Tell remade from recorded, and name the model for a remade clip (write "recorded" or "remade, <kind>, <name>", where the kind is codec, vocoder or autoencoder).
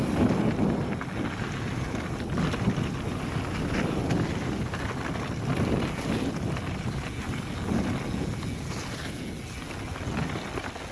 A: recorded